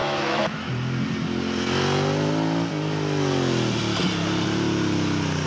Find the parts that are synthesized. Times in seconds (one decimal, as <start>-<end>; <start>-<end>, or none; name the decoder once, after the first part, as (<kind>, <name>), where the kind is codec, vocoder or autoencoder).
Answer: 0.0-0.7 (autoencoder, DAC-VAE)